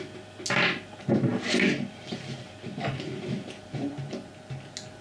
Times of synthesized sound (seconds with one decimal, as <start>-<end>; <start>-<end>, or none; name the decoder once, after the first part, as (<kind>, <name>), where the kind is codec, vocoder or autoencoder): 1.3-4.3 (vocoder, BigVGAN v2)